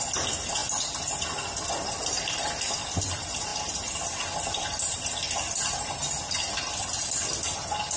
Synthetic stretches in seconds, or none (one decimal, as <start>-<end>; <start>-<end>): none